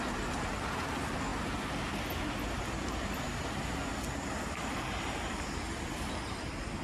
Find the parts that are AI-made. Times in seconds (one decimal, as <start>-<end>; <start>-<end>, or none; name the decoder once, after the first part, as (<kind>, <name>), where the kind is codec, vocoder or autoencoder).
none